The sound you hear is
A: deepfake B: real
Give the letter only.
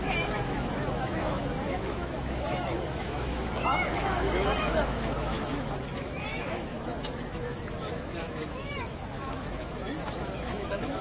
A